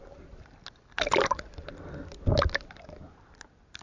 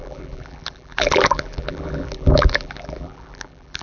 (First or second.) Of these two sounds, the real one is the first